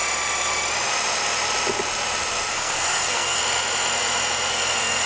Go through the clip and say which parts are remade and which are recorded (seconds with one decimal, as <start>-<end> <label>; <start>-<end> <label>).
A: 0.0-2.5 recorded; 2.5-3.4 remade; 3.4-4.5 recorded; 4.5-5.1 remade